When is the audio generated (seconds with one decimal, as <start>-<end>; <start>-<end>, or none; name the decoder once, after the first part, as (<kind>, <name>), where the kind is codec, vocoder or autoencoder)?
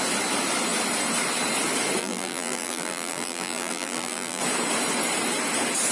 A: 2.0-4.4 (vocoder, BigVGAN v2)